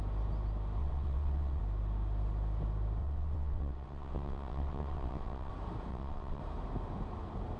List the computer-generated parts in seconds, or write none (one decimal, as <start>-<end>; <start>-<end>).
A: 0.8-1.6; 3.0-5.5; 5.9-6.4